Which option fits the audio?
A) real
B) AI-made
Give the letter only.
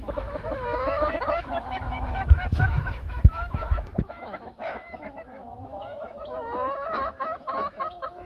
B